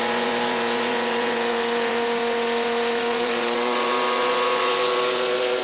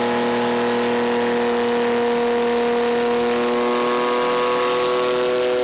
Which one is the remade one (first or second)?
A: first